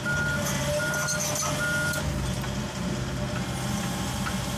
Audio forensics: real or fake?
real